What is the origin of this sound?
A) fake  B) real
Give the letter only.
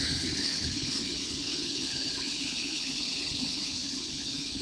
A